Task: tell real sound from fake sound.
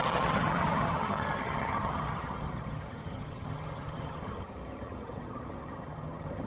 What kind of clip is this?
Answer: fake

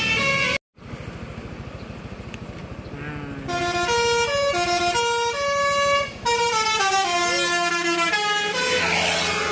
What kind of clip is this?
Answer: real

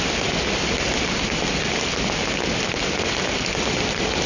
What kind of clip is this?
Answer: real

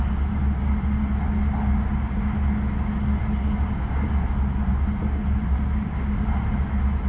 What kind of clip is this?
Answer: real